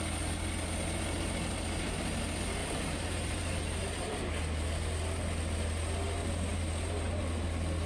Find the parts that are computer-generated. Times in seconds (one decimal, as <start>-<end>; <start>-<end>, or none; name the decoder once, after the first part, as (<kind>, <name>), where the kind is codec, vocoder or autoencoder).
2.6-4.2 (vocoder, BigVGAN v2); 6.5-7.2